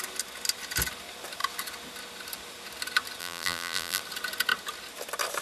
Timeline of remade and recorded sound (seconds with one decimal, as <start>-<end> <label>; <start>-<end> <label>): 0.0-3.2 recorded; 3.2-4.0 remade; 4.0-5.4 recorded